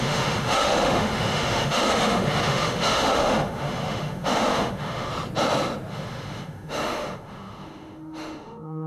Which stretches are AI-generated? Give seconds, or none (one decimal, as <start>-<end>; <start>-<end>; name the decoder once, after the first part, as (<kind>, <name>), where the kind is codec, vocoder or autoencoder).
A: 0.0-5.1 (autoencoder, DAC-VAE); 5.9-8.9